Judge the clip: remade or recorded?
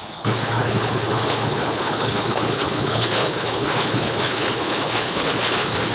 remade